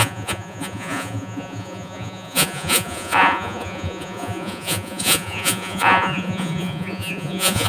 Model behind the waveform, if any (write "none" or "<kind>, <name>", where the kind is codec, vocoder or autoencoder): vocoder, Vocos